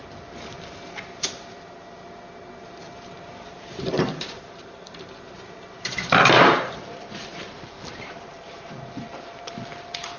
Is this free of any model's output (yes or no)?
no